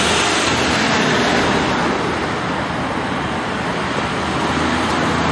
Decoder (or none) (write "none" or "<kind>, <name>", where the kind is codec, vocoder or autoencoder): none